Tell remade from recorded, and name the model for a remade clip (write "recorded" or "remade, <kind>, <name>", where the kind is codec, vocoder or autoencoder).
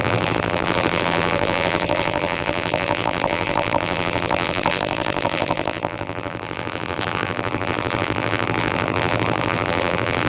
remade, vocoder, BigVGAN v2